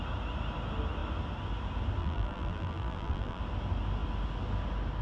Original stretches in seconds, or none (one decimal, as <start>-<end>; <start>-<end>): 0.0-2.0; 3.4-5.0